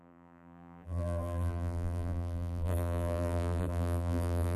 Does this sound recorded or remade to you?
remade